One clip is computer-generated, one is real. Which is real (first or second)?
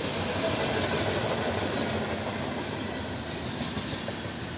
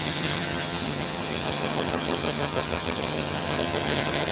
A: first